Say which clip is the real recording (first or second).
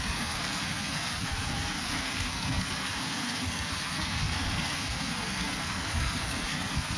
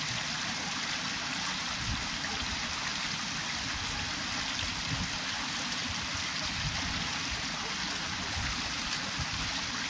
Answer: second